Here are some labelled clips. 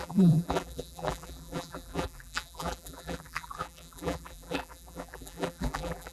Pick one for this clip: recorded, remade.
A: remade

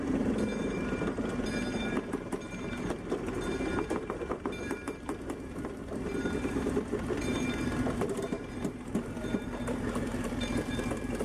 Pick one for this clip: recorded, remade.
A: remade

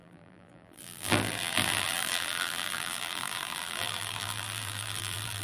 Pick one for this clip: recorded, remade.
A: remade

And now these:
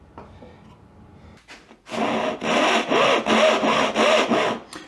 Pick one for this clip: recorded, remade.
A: recorded